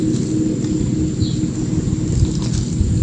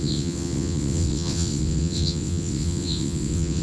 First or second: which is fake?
second